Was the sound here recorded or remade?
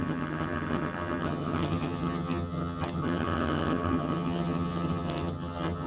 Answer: remade